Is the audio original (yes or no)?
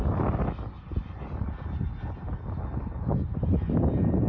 yes